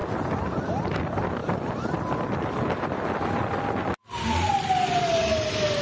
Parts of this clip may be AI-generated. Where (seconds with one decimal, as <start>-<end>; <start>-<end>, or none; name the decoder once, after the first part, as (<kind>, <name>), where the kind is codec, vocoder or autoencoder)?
none